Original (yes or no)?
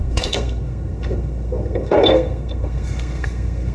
no